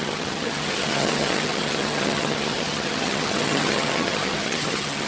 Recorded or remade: remade